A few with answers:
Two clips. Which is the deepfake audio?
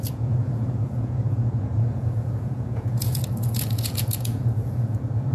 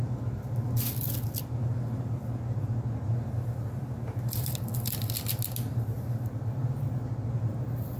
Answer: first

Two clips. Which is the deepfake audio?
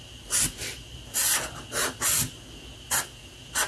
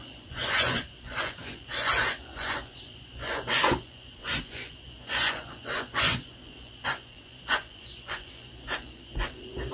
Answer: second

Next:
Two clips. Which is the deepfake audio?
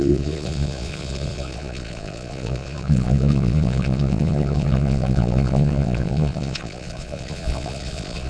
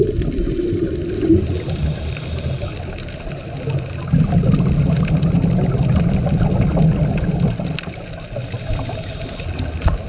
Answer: first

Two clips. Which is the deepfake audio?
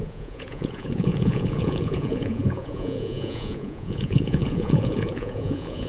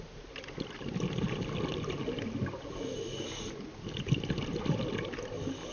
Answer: first